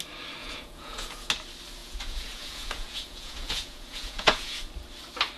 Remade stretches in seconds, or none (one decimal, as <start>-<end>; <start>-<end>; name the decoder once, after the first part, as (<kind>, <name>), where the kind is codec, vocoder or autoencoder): 0.4-1.3 (vocoder, Vocos); 1.8-4.7